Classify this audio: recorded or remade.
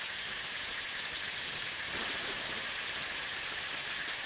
recorded